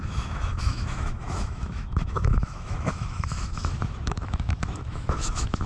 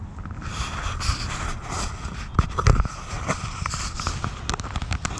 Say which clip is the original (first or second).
second